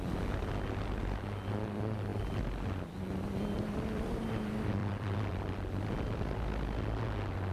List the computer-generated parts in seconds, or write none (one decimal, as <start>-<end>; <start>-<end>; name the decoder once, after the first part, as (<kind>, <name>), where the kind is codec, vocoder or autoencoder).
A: 4.8-5.4 (vocoder, BigVGAN v2)